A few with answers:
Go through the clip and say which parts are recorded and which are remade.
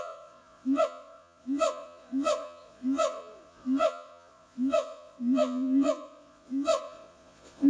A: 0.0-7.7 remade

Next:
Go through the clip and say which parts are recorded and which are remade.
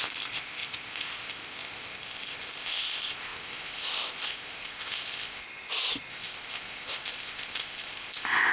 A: 0.0-5.4 remade; 5.4-6.1 recorded; 6.1-8.5 remade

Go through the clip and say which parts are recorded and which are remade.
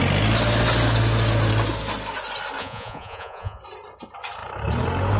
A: 0.0-2.6 recorded; 2.6-3.6 remade; 3.6-5.2 recorded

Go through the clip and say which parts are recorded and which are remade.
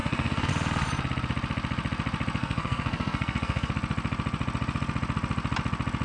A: 0.0-0.5 remade; 0.5-2.4 recorded; 2.4-3.7 remade; 3.7-6.0 recorded